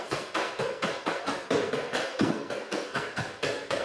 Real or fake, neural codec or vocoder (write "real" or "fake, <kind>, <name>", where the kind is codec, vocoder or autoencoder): fake, codec, SNAC